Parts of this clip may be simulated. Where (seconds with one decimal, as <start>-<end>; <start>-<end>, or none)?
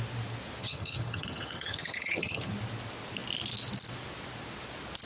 0.6-2.5